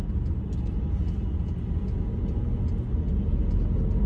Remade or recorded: recorded